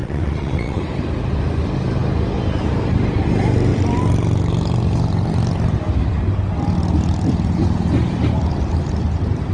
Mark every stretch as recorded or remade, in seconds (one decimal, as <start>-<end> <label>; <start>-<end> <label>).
0.0-0.8 remade; 0.8-9.5 recorded